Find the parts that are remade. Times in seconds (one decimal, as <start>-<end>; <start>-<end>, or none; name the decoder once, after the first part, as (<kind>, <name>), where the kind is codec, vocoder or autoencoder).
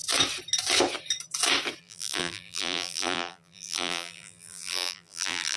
1.8-5.6 (vocoder, BigVGAN v2)